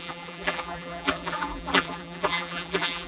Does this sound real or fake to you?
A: fake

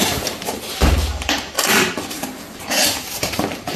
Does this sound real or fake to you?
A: fake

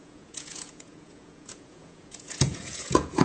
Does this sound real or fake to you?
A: fake